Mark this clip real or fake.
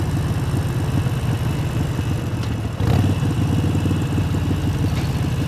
real